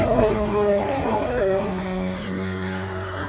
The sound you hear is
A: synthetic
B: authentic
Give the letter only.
A